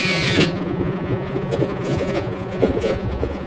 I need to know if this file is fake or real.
fake